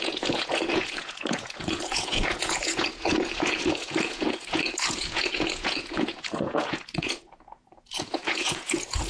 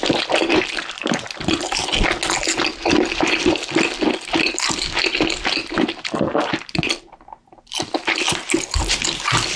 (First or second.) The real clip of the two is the second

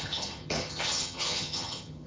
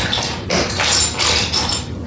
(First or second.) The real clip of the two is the second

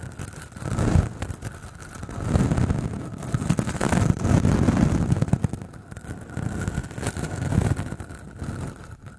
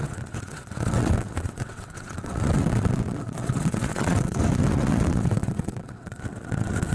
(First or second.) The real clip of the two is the first